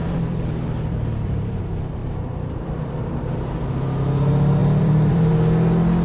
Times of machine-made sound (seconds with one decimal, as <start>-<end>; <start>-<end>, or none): 0.0-1.6; 2.0-3.7; 4.6-5.3

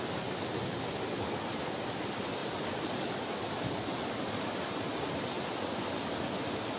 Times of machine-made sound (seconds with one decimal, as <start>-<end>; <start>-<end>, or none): none

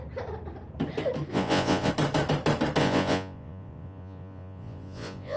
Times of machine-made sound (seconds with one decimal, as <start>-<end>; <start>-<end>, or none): 1.3-1.9; 2.8-5.4

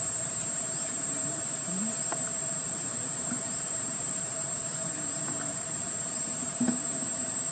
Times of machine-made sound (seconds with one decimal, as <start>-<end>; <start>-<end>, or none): 0.0-7.5

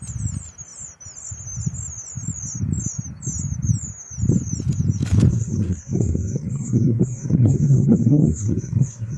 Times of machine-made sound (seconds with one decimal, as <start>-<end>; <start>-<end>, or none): 5.3-9.2

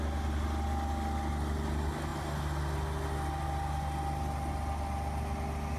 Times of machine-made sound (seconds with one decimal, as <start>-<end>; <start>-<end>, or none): none